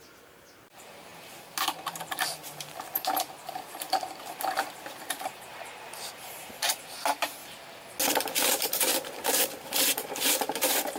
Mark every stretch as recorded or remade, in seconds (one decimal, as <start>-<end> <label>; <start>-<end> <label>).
0.0-7.4 remade; 7.4-8.4 recorded; 8.4-11.0 remade